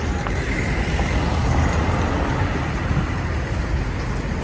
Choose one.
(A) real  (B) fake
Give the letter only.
A